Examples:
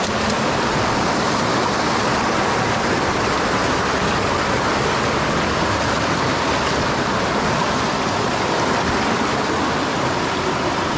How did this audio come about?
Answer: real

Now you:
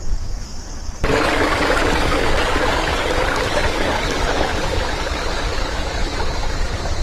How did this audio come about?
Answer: fake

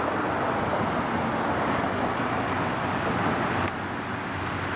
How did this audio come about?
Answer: real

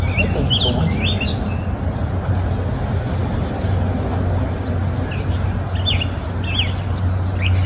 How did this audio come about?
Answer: real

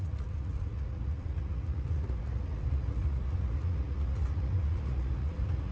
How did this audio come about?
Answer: fake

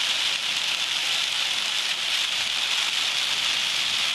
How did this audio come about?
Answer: real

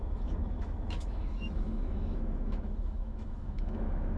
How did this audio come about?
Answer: fake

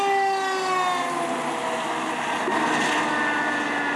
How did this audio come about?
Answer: real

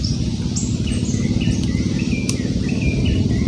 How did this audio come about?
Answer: real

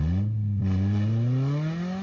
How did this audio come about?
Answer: real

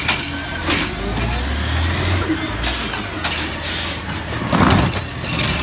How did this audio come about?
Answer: real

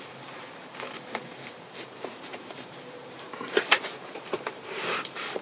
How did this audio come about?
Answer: fake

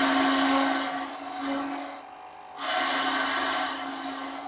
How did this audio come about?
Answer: real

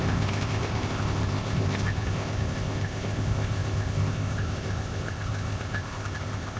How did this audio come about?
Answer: fake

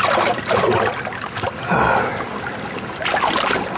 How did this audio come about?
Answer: real